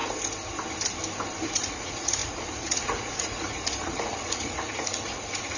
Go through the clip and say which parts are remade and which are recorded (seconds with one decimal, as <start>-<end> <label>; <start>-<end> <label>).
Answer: 0.0-1.7 recorded; 1.7-5.6 remade